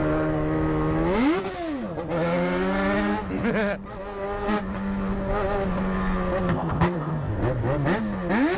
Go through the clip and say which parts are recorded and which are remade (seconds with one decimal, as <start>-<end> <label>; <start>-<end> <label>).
0.0-6.5 recorded; 6.5-7.3 remade; 7.3-8.6 recorded